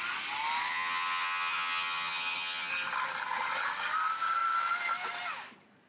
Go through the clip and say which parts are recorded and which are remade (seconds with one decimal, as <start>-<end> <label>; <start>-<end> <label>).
0.0-0.7 recorded; 0.7-2.7 remade; 2.7-5.9 recorded

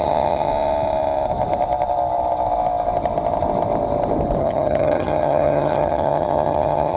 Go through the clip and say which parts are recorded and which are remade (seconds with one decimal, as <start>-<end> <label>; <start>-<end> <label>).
0.0-0.5 remade; 0.5-4.4 recorded; 4.4-7.0 remade

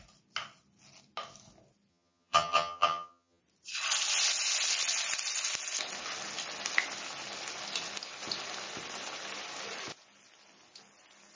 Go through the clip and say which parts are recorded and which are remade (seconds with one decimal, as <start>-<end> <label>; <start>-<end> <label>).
0.0-1.9 recorded; 1.9-3.4 remade; 3.4-11.4 recorded